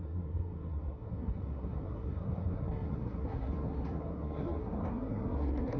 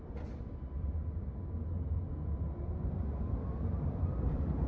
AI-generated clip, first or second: first